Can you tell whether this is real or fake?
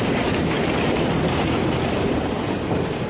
fake